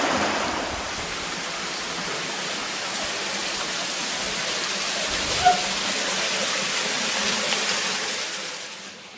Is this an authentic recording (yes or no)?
yes